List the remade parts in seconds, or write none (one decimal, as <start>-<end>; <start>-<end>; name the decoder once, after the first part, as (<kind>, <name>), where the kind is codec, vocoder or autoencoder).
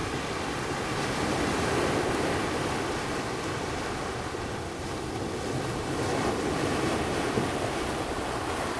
none